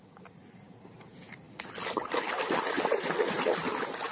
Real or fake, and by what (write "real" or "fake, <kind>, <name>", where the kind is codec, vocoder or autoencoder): real